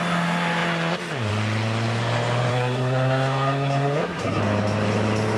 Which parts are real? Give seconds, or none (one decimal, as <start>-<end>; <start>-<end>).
0.0-2.5; 4.4-5.4